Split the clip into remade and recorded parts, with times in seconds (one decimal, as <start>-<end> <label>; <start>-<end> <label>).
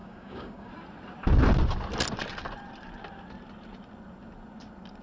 0.0-0.7 remade; 0.7-5.0 recorded